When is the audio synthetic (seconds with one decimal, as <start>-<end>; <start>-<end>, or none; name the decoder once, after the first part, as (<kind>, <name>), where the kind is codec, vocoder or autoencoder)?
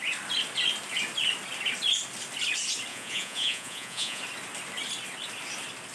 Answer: 2.9-4.2 (vocoder, Vocos)